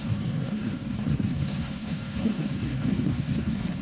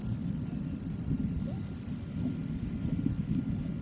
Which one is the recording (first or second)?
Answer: second